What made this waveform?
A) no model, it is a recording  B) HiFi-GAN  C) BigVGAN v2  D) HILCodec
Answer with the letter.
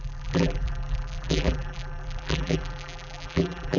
C